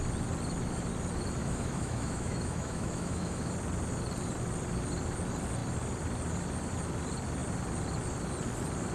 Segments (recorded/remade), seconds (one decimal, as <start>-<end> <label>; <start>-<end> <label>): 0.0-1.4 recorded; 1.4-3.5 remade; 3.5-8.9 recorded